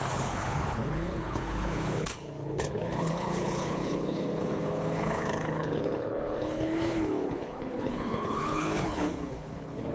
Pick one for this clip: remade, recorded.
remade